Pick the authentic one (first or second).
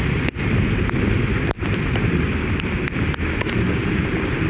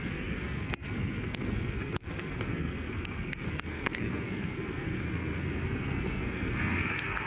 first